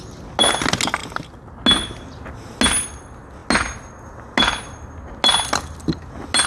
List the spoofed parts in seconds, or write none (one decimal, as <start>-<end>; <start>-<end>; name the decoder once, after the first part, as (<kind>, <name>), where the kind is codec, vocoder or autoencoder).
none